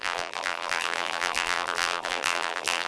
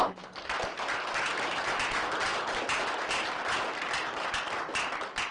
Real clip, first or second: second